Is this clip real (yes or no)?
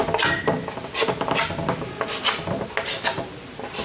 yes